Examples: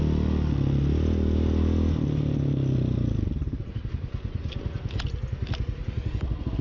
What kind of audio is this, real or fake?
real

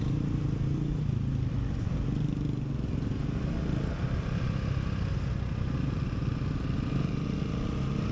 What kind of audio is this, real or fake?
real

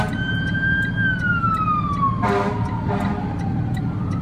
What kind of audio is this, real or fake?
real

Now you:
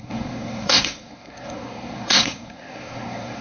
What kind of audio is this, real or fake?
fake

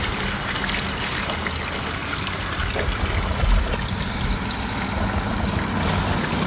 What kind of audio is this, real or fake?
real